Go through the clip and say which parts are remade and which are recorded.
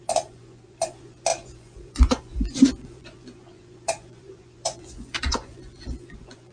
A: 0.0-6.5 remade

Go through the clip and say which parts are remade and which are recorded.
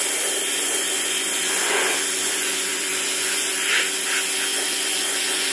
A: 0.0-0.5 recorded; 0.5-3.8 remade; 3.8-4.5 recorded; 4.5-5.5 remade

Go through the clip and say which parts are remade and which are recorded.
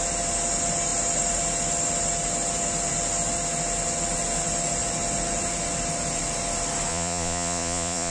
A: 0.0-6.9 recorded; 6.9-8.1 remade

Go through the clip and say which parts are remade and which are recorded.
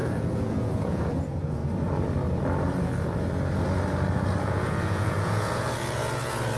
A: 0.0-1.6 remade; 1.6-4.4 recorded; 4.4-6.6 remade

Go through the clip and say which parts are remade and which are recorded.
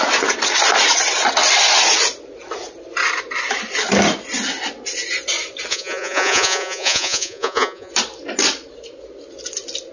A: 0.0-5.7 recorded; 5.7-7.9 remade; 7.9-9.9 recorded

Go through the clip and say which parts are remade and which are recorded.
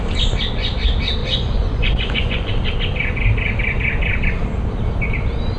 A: 0.0-1.2 recorded; 1.2-2.5 remade; 2.5-5.6 recorded